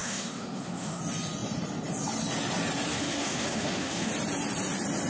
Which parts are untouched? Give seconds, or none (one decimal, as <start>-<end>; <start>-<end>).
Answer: 1.0-2.9; 4.1-5.1